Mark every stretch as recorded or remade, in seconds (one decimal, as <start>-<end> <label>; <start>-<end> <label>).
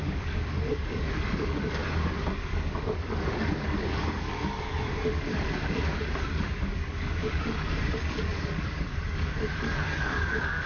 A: 0.0-1.8 remade; 1.8-2.3 recorded; 2.3-10.7 remade